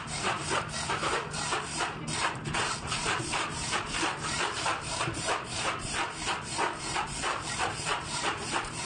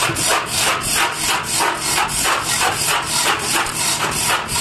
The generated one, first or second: first